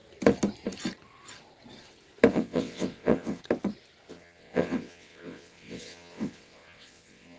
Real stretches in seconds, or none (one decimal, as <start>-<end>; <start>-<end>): 0.0-2.3; 3.4-4.1